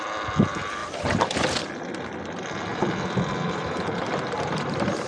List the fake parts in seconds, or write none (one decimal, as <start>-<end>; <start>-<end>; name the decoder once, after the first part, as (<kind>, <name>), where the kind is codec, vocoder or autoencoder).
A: none